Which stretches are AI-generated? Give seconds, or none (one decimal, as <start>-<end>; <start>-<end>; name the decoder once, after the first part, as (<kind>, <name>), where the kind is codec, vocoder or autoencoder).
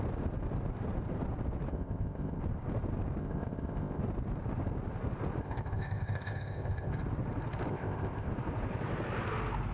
1.7-2.4 (codec, ZipCodec); 3.2-4.0; 5.4-6.9; 7.7-8.3